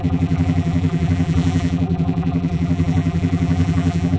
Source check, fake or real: fake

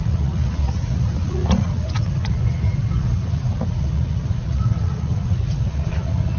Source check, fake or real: fake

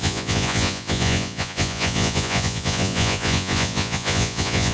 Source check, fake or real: fake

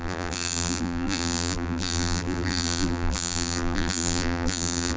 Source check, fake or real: fake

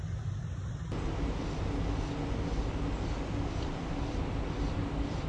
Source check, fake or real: real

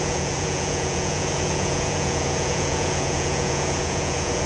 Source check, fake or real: fake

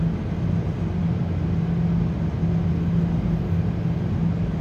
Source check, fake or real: real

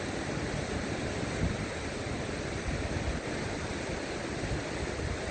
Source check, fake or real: real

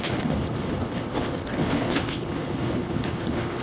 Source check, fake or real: fake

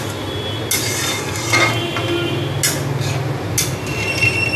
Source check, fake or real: real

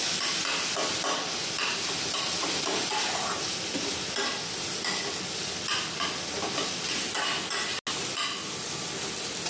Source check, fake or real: real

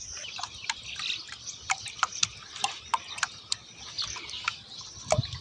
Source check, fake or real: real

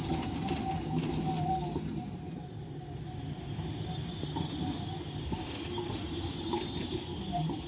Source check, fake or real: real